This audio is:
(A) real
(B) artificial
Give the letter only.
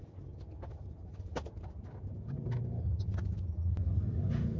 A